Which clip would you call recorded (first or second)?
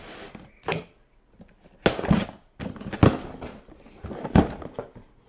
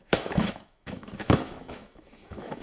first